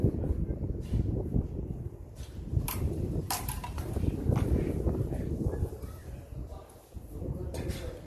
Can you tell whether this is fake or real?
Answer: real